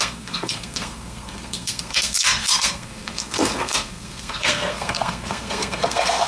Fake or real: fake